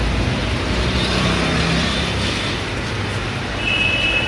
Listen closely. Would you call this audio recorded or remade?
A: recorded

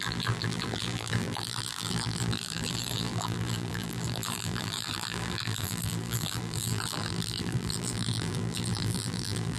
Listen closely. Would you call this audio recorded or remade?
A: remade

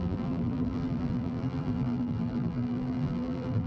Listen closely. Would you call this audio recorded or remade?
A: remade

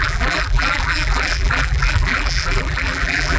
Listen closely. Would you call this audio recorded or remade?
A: remade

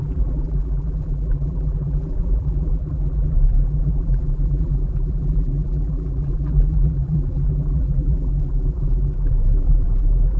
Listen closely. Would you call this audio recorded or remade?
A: remade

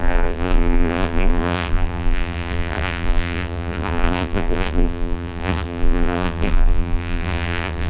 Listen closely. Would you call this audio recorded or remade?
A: remade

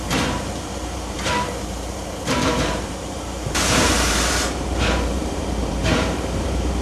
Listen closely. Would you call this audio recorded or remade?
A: remade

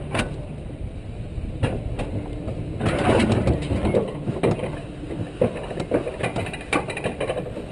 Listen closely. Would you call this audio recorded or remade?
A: recorded